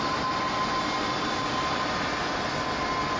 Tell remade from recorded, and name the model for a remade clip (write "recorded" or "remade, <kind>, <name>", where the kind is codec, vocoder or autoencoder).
recorded